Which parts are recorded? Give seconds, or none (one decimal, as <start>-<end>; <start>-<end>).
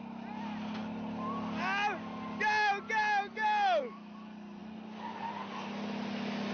0.0-6.5